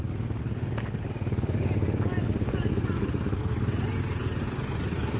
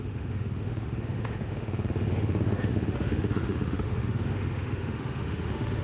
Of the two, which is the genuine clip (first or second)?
first